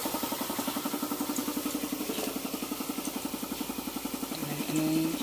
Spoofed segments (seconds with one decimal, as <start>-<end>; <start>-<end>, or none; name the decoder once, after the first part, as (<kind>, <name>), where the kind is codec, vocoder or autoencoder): 0.0-0.9 (vocoder, BigVGAN v2)